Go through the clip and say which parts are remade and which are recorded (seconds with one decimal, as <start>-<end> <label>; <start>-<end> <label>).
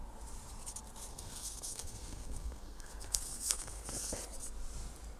0.0-1.1 recorded; 1.1-4.2 remade; 4.2-5.2 recorded